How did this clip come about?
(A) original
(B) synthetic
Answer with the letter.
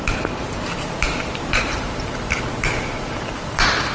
B